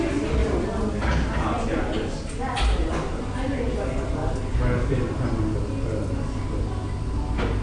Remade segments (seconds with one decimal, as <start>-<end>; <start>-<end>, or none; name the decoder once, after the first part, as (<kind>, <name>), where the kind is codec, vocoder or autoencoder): none